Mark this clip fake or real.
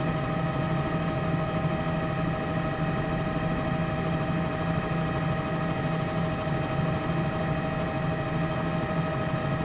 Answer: real